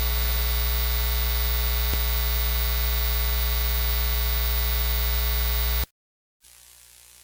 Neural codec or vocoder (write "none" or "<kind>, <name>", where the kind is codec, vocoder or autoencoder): none